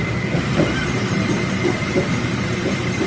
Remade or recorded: remade